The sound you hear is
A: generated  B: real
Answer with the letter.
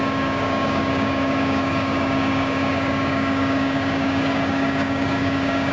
A